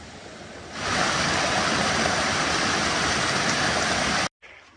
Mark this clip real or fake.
real